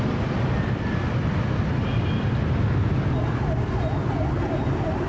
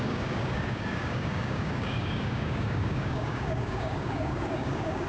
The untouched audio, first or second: first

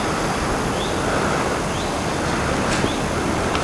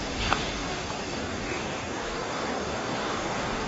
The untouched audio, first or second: first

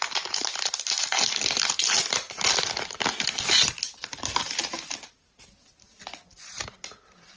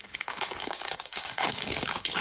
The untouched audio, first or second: first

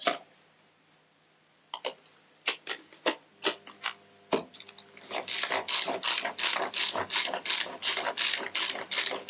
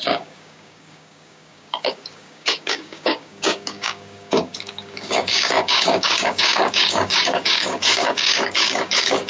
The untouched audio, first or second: first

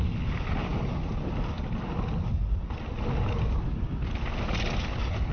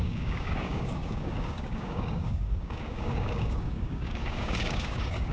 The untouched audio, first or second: first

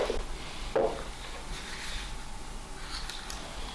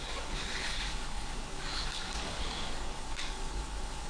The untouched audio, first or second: first